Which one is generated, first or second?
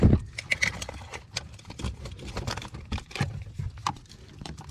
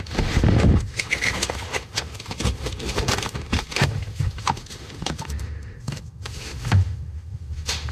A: second